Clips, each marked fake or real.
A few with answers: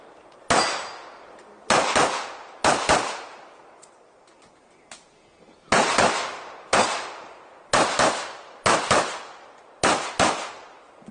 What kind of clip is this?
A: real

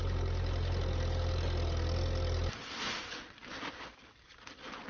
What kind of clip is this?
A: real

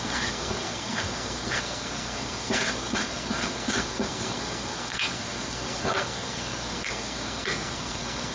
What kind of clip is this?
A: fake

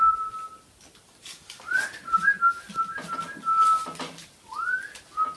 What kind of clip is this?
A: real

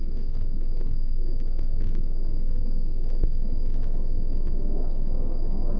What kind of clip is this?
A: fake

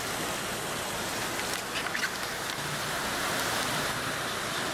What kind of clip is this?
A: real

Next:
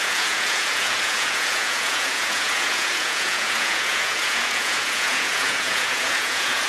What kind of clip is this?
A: fake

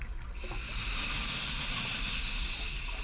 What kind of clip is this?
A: real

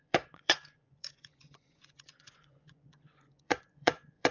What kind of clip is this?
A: fake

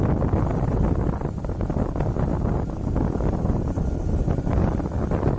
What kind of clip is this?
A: real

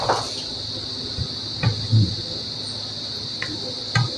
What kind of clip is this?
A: real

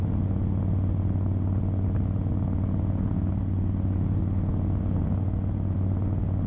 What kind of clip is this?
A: real